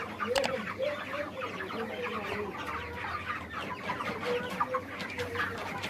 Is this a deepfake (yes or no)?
no